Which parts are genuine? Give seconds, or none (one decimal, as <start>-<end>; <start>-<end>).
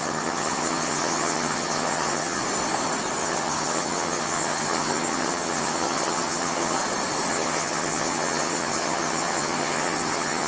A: 2.4-3.2; 6.8-7.3